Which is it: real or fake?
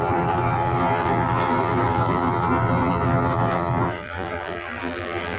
fake